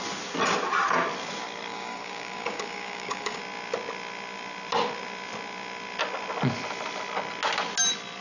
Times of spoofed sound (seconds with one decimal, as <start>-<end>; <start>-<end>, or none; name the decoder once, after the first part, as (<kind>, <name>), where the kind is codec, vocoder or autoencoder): 1.7-3.4 (codec, DAC)